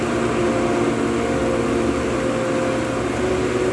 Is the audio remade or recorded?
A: recorded